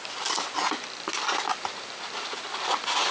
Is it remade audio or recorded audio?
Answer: recorded